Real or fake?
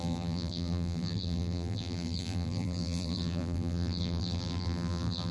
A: fake